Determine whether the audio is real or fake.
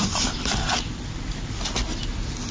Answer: real